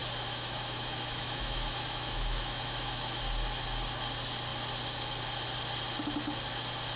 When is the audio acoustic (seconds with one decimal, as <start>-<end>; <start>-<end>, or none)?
3.2-7.0